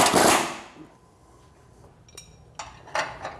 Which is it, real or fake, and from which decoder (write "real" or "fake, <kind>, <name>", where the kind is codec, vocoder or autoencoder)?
real